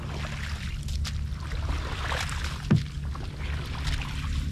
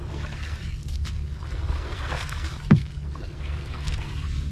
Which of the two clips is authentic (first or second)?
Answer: first